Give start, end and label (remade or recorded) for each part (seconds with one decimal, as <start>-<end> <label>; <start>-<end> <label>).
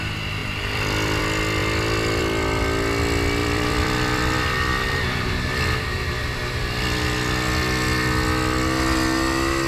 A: 0.0-0.4 recorded; 0.4-1.2 remade; 1.2-3.4 recorded; 3.4-6.4 remade; 6.4-9.7 recorded